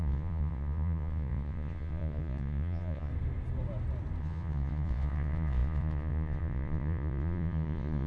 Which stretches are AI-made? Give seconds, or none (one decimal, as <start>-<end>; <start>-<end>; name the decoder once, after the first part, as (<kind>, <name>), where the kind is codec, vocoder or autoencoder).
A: 0.0-3.1 (vocoder, Vocos); 4.2-8.1